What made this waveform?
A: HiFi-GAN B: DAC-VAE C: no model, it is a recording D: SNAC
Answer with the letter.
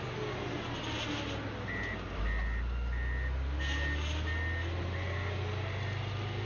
C